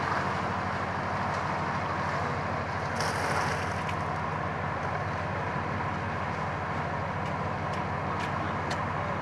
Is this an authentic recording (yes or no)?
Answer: yes